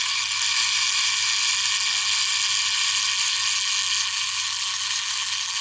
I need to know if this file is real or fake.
real